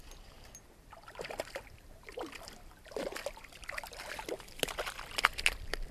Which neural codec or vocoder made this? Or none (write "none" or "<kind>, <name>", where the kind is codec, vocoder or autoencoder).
vocoder, BigVGAN v2